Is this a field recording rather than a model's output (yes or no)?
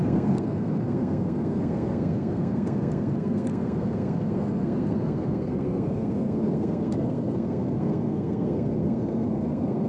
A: no